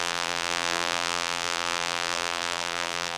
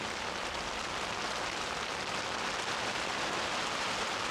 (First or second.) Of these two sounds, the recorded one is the second